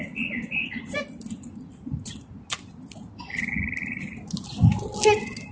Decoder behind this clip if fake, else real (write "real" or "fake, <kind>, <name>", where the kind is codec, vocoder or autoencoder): real